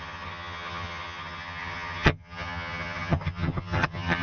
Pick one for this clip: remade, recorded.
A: remade